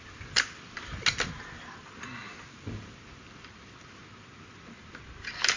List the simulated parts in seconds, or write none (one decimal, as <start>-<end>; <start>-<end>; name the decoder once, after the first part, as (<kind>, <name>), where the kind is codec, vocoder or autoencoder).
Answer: none